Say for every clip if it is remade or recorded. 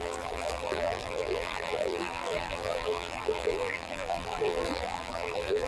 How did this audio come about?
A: remade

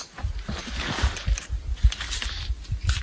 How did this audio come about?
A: recorded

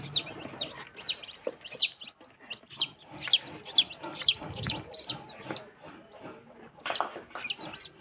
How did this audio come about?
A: recorded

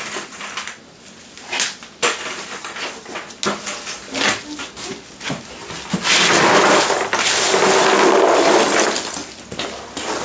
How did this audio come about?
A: recorded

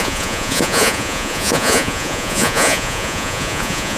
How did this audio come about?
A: remade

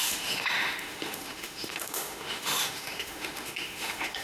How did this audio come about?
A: remade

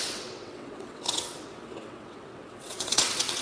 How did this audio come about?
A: remade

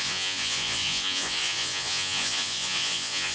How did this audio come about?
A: remade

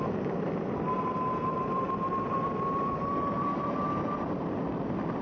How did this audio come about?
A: remade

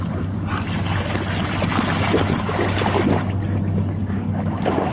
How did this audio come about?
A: recorded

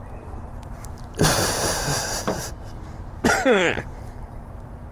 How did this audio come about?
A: remade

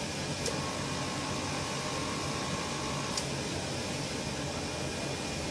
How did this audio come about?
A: recorded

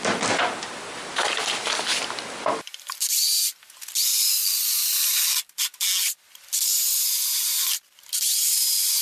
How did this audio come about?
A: recorded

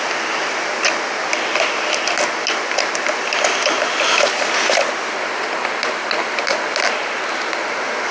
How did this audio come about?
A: recorded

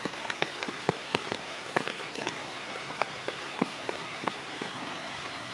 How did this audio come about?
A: remade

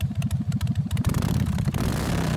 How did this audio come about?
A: recorded